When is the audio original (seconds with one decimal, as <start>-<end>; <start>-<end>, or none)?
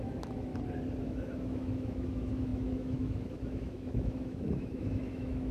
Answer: 0.5-1.0